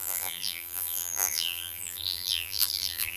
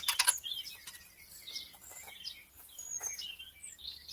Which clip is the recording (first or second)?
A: second